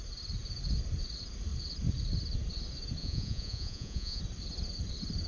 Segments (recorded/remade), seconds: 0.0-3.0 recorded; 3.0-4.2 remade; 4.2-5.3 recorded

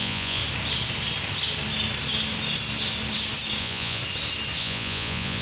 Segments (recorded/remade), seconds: 0.0-0.4 remade; 0.4-3.6 recorded; 3.6-4.0 remade; 4.0-4.6 recorded; 4.6-5.4 remade

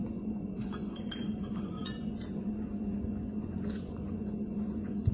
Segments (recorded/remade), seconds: 0.0-5.1 remade

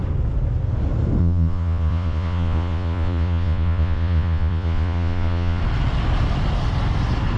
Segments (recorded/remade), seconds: 0.0-1.2 recorded; 1.2-5.6 remade; 5.6-7.4 recorded

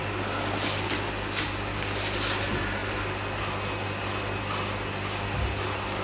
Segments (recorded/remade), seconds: 0.0-6.0 recorded

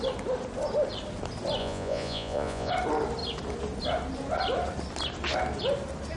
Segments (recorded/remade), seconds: 0.0-1.6 recorded; 1.6-2.7 remade; 2.7-6.2 recorded

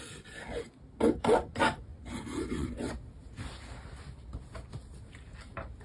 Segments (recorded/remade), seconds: 0.0-1.9 recorded; 1.9-3.0 remade; 3.0-5.8 recorded